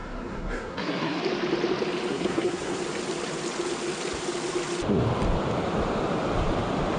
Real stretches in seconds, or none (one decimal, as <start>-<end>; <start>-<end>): 1.2-2.1; 2.8-7.0